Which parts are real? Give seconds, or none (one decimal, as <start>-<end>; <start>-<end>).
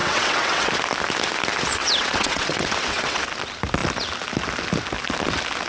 0.7-1.8; 3.2-5.7